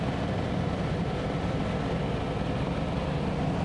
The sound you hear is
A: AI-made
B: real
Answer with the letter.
B